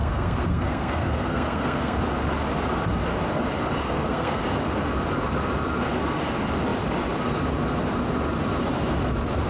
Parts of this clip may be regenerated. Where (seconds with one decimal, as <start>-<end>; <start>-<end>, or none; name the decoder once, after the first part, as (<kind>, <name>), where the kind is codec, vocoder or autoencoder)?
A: 0.0-2.0 (codec, SNAC); 3.8-4.4